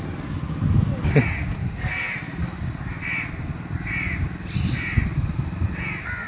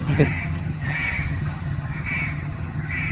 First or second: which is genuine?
first